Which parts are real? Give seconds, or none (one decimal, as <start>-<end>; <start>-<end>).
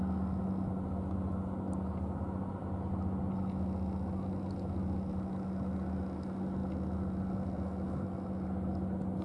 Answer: 0.0-9.2